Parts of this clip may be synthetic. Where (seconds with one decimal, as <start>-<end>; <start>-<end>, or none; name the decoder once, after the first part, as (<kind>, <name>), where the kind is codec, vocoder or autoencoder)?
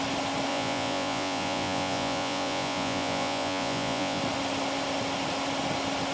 0.5-4.2 (vocoder, Vocos)